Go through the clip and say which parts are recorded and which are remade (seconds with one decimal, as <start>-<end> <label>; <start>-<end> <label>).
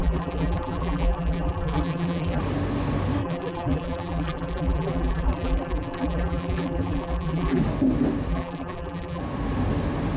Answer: 0.0-2.4 remade; 2.4-3.2 recorded; 3.2-7.6 remade; 7.6-8.3 recorded; 8.3-9.2 remade; 9.2-10.2 recorded